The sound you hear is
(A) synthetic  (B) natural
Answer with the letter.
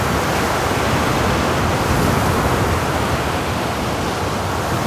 B